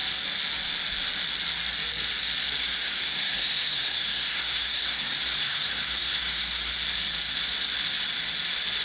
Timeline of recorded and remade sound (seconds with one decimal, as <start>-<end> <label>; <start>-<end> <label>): 0.0-2.6 recorded; 2.6-6.7 remade; 6.7-8.8 recorded